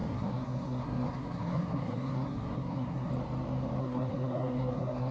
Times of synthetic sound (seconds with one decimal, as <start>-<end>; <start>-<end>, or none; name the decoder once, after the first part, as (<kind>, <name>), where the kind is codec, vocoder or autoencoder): 0.0-3.1 (codec, SNAC); 3.8-5.1